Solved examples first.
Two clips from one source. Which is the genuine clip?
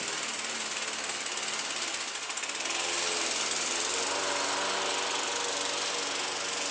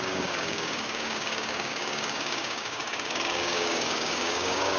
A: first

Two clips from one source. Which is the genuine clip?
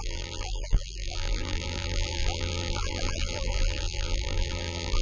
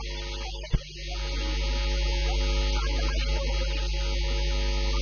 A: second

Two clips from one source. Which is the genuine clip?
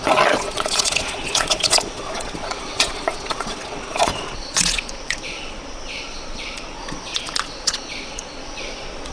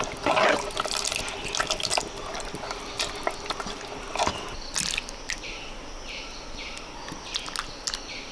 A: second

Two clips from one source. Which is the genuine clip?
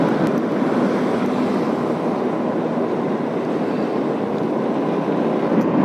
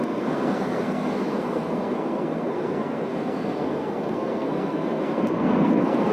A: first